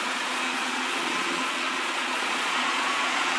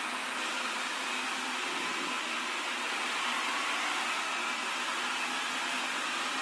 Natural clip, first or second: second